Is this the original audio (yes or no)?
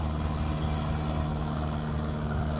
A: yes